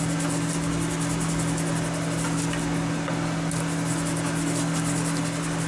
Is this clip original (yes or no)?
yes